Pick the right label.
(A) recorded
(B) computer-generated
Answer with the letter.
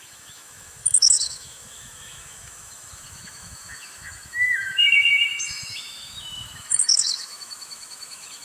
B